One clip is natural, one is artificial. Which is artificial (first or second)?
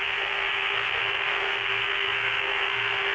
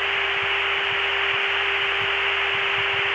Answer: first